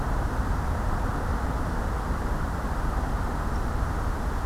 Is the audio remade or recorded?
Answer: recorded